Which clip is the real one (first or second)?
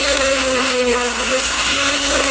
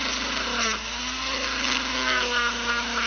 second